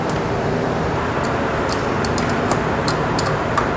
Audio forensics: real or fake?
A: fake